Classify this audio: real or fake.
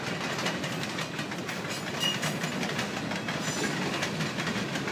real